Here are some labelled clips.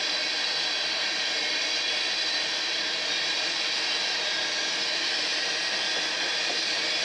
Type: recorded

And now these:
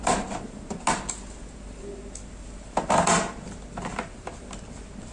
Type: recorded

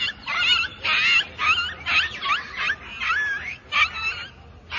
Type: recorded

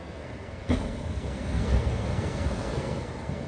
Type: remade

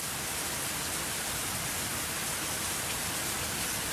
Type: recorded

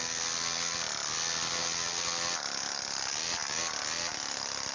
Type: recorded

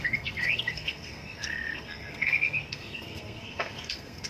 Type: remade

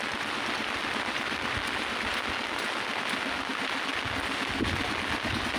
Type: recorded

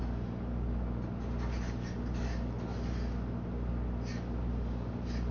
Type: recorded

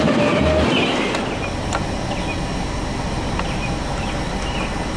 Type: recorded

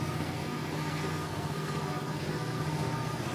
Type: remade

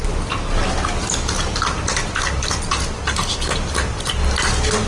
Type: recorded